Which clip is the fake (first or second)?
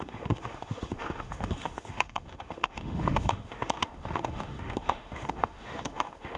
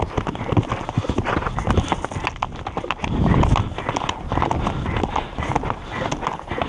first